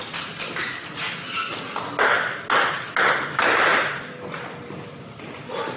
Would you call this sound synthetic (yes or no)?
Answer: no